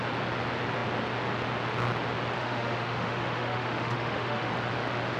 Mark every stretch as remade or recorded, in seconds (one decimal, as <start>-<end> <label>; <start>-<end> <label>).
0.0-2.4 recorded; 2.4-4.5 remade; 4.5-5.2 recorded